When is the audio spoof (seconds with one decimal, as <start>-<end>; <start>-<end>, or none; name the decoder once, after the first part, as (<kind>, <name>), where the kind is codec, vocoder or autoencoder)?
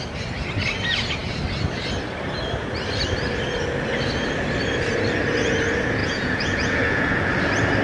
6.0-7.3 (vocoder, Vocos)